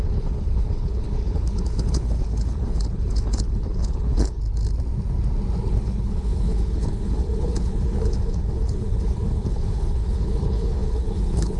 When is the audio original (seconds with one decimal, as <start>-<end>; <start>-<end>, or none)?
4.4-5.7